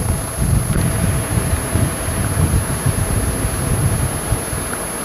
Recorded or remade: recorded